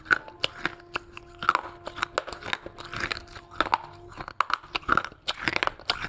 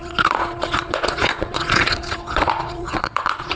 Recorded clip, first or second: first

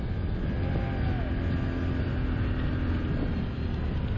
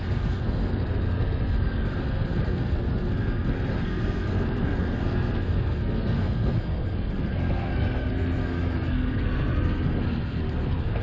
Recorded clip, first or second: first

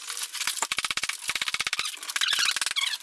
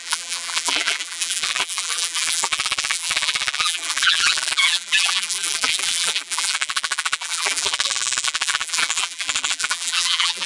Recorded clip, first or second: first